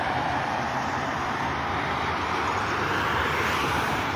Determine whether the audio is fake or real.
fake